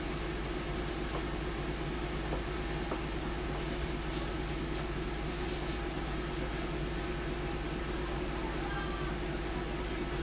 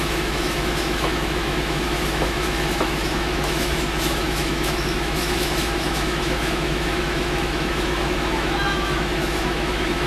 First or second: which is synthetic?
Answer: second